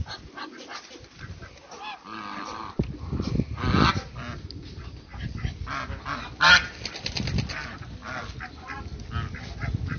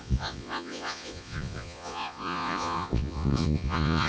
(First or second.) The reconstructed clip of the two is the second